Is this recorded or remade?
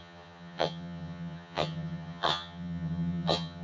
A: remade